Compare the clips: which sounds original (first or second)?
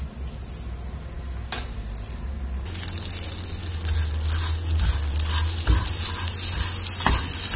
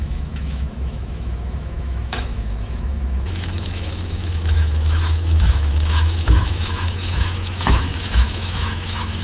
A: first